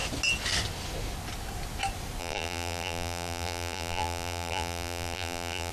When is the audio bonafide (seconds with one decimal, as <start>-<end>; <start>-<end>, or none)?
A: 0.0-2.2

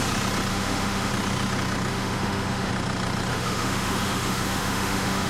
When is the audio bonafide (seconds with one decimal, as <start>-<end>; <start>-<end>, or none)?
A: 0.0-0.5; 1.1-1.9; 2.7-3.3